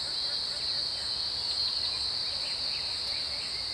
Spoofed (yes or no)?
no